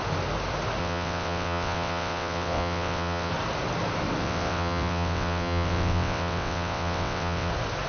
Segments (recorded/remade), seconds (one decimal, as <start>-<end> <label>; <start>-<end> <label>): 0.0-0.8 recorded; 0.8-3.3 remade; 3.3-4.2 recorded; 4.2-7.5 remade; 7.5-7.9 recorded